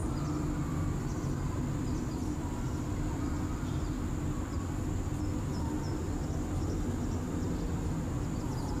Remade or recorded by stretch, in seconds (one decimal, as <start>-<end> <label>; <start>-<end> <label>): 0.0-8.8 recorded